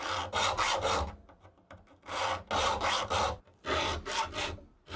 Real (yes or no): yes